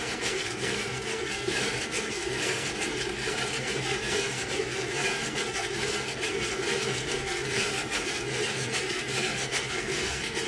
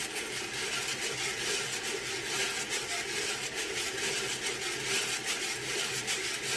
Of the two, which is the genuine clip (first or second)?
second